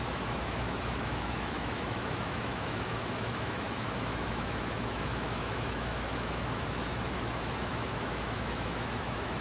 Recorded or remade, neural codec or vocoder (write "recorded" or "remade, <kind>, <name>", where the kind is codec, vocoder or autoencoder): remade, autoencoder, DAC-VAE